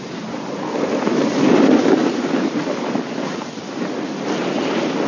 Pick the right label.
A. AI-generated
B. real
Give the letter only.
B